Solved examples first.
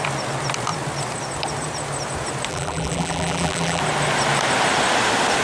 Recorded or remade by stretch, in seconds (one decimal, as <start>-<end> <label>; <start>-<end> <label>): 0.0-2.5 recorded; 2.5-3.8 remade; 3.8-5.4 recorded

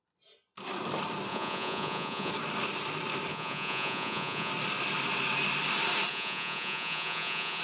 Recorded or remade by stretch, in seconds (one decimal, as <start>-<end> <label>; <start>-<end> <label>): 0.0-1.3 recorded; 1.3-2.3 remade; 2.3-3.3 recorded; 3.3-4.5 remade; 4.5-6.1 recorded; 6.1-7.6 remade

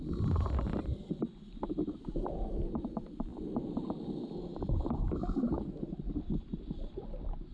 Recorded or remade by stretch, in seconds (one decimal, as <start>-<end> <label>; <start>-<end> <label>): 0.0-7.5 recorded

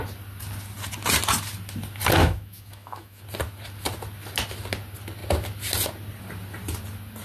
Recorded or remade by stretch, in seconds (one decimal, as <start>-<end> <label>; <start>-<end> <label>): 0.0-2.2 recorded; 2.2-3.2 remade; 3.2-7.2 recorded